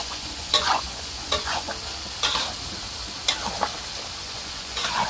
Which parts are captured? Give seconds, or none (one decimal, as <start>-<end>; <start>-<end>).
1.7-4.2